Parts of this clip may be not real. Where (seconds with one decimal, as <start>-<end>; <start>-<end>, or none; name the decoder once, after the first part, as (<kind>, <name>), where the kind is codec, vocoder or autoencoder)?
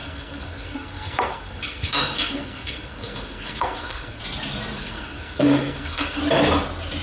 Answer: 0.0-4.2 (codec, SNAC); 4.8-6.2